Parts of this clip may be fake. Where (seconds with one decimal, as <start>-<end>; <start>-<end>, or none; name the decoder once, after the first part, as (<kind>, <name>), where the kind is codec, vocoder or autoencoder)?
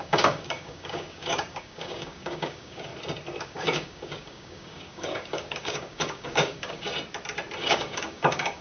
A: 0.0-2.9 (codec, DAC); 3.4-6.9; 7.6-8.6